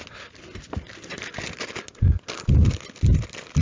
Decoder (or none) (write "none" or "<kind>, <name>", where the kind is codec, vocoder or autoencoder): none